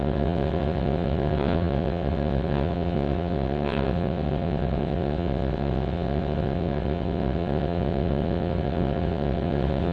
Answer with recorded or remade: remade